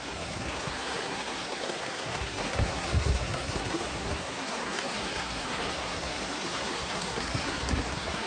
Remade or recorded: remade